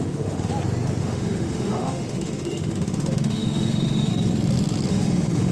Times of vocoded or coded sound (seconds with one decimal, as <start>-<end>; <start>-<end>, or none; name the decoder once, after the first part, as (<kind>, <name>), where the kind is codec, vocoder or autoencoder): 0.0-0.5 (autoencoder, DAC-VAE); 1.0-4.1; 4.9-5.5